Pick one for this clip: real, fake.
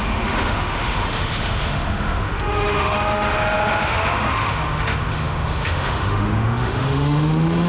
fake